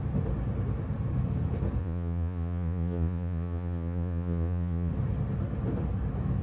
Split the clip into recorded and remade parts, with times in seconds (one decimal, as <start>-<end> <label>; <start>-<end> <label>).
0.0-1.8 recorded; 1.8-4.9 remade; 4.9-6.4 recorded